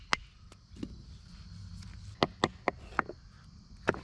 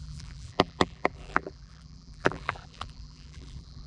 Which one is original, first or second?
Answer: first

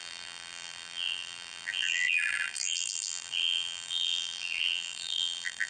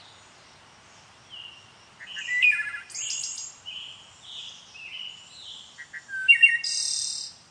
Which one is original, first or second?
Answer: second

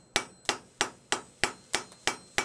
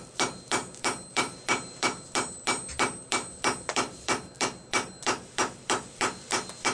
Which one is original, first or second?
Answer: first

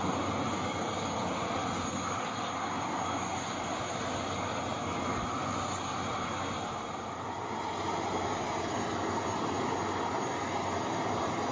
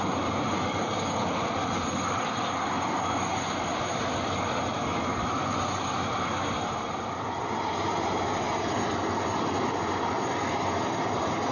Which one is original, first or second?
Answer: first